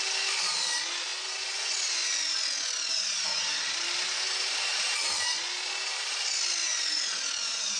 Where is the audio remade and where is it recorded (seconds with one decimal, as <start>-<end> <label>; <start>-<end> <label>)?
0.0-1.1 recorded; 1.1-3.4 remade; 3.4-6.6 recorded; 6.6-7.8 remade